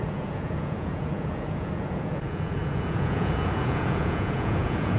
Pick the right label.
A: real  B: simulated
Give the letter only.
B